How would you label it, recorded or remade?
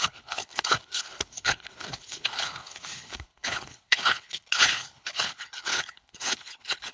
remade